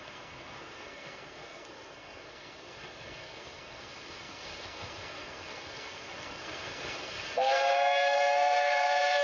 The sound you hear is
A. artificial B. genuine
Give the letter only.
A